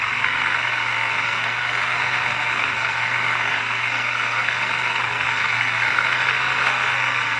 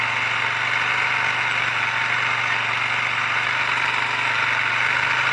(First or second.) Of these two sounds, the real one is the second